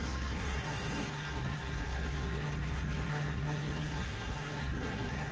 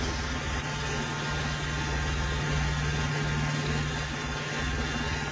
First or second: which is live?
second